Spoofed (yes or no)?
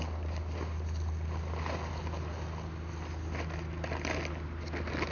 no